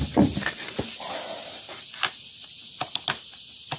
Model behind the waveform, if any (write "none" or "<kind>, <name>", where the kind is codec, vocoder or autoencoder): none